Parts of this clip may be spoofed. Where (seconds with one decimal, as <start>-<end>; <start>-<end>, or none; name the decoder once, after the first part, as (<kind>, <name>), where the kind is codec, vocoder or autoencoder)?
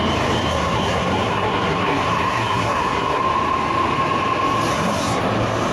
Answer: 0.5-3.2 (codec, SNAC); 4.7-5.2